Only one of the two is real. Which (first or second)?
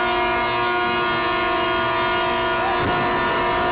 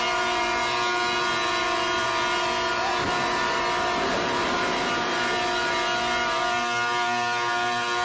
first